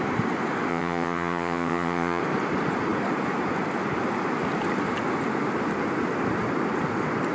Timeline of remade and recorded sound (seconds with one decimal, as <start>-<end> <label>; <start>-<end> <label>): 0.0-0.7 recorded; 0.7-2.2 remade; 2.2-7.3 recorded